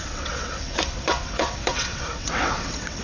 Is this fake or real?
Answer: fake